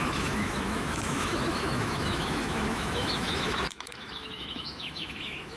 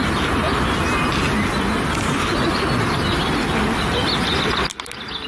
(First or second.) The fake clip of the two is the first